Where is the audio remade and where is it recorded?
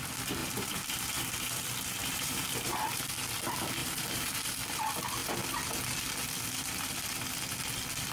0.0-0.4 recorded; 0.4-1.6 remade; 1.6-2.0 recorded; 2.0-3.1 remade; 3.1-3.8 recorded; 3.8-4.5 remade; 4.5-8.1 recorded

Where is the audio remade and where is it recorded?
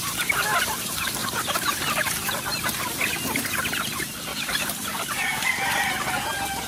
0.0-1.2 recorded; 1.2-3.8 remade; 3.8-4.3 recorded; 4.3-5.5 remade; 5.5-6.7 recorded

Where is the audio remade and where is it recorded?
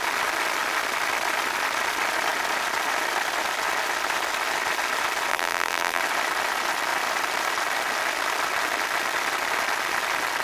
0.0-5.3 recorded; 5.3-6.0 remade; 6.0-10.4 recorded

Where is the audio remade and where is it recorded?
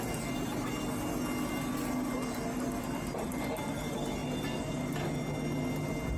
0.0-6.2 recorded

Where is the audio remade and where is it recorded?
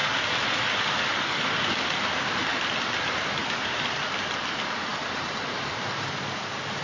0.0-3.4 recorded; 3.4-4.0 remade; 4.0-4.9 recorded; 4.9-5.7 remade; 5.7-6.8 recorded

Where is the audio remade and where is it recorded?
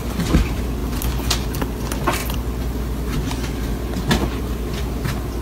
0.0-5.4 recorded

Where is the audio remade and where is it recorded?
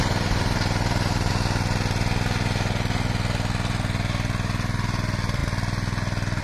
0.0-1.3 remade; 1.3-6.4 recorded